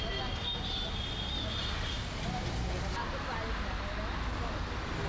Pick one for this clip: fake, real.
real